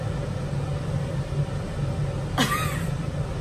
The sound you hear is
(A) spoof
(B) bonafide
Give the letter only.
B